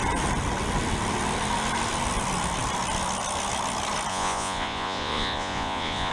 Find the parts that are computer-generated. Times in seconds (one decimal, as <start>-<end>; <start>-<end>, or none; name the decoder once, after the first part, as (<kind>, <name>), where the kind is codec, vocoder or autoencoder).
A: 4.1-6.1 (vocoder, Vocos)